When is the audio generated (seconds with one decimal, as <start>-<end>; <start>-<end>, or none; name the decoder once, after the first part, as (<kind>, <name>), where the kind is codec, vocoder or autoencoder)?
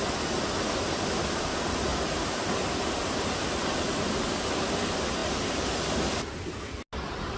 none